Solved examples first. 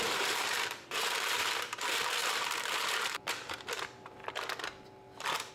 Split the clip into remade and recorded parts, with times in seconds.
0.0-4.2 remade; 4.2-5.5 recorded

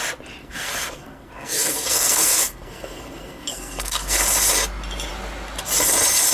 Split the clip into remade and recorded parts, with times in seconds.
0.0-0.4 recorded; 0.4-4.2 remade; 4.2-6.3 recorded

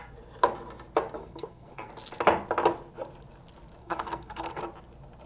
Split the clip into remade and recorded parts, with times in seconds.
0.0-1.2 recorded; 1.2-1.9 remade; 1.9-3.8 recorded; 3.8-4.6 remade; 4.6-5.3 recorded

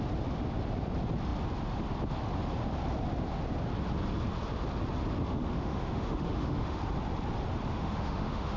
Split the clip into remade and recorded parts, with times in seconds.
0.0-5.3 recorded; 5.3-6.8 remade; 6.8-7.7 recorded; 7.7-8.6 remade

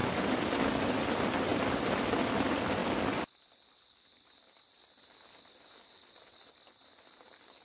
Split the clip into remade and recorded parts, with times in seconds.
0.0-0.8 remade; 0.8-7.6 recorded

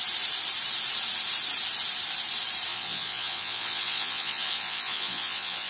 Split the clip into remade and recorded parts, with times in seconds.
0.0-2.7 recorded; 2.7-5.7 remade

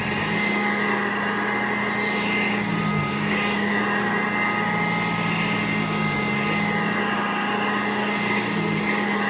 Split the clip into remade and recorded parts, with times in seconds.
0.0-2.9 recorded; 2.9-3.8 remade; 3.8-8.0 recorded; 8.0-8.8 remade; 8.8-9.3 recorded

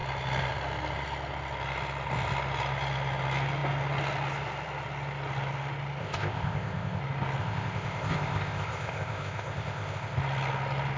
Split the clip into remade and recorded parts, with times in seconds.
0.0-6.0 recorded; 6.0-7.0 remade; 7.0-7.4 recorded; 7.4-10.2 remade; 10.2-11.0 recorded